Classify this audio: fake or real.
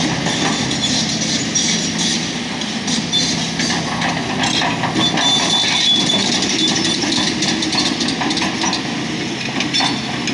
real